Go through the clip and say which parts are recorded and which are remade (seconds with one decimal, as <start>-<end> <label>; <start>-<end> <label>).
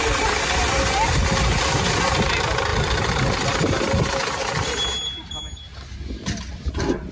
0.0-7.1 recorded